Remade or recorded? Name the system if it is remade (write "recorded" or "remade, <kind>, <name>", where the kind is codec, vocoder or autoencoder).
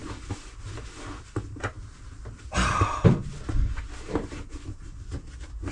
recorded